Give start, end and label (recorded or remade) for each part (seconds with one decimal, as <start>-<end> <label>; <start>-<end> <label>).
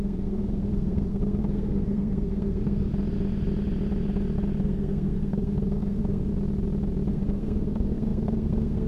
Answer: 0.0-2.9 remade; 2.9-4.6 recorded; 4.6-6.3 remade; 6.3-7.1 recorded; 7.1-8.9 remade